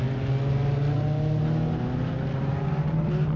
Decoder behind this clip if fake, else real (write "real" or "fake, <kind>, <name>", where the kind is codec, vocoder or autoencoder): real